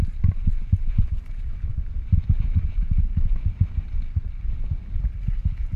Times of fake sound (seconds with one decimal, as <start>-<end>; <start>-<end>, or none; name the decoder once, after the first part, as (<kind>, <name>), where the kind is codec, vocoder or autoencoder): 0.0-1.7 (vocoder, BigVGAN v2); 4.0-5.8